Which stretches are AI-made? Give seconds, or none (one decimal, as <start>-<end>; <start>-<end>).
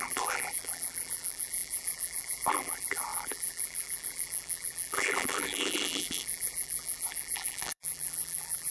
0.0-8.7